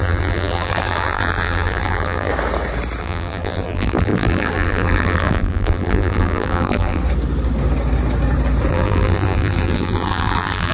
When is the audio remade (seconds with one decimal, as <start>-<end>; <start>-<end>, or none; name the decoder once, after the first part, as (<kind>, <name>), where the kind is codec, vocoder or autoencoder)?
0.0-2.3 (vocoder, BigVGAN v2); 3.0-7.0; 8.7-10.7